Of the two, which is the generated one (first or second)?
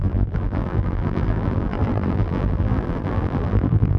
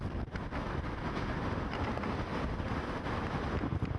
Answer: first